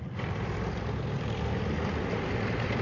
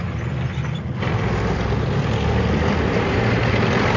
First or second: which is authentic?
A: second